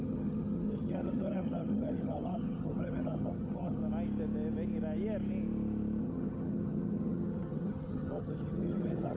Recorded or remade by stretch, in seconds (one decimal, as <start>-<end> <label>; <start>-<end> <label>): 0.0-3.8 remade; 3.8-6.0 recorded; 6.0-9.2 remade